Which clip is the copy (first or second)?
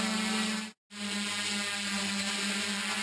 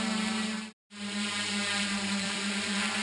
second